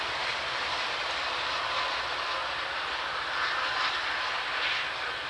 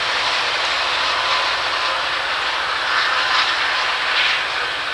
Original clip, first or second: second